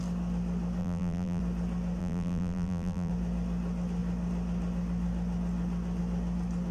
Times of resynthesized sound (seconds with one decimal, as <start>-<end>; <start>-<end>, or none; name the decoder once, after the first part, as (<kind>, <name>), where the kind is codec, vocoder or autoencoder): 0.8-1.4 (vocoder, BigVGAN v2); 2.0-3.1